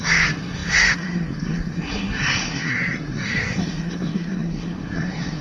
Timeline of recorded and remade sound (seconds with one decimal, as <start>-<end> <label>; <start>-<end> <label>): 0.0-5.4 remade